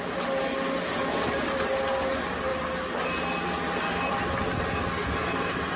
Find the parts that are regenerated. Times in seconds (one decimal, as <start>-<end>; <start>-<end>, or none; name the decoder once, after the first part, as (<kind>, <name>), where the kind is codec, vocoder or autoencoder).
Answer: none